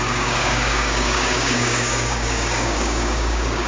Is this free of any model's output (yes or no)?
no